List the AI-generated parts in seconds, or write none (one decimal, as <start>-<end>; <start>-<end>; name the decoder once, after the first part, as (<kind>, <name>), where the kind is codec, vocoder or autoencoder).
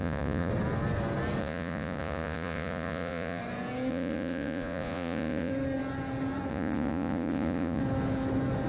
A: 0.0-0.5 (vocoder, Vocos); 1.4-3.4; 3.9-5.5; 6.5-7.8